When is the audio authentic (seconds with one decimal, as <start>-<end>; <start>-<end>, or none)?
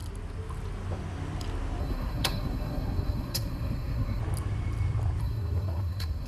0.0-1.8; 4.2-5.2